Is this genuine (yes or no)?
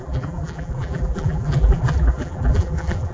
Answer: no